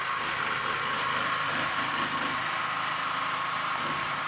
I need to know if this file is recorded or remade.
recorded